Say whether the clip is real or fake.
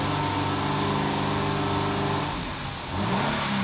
real